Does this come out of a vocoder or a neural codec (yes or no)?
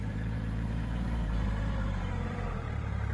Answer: yes